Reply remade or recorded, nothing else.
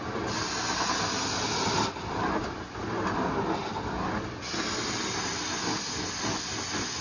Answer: recorded